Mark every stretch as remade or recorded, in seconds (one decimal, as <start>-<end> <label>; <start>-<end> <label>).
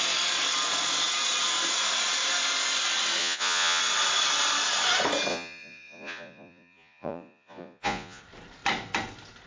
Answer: 0.0-3.2 recorded; 3.2-3.8 remade; 3.8-5.3 recorded; 5.3-8.2 remade; 8.2-9.5 recorded